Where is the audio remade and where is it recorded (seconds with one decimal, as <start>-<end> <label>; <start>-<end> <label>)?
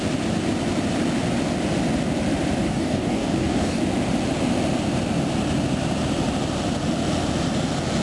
0.0-2.6 recorded; 2.6-3.8 remade; 3.8-8.0 recorded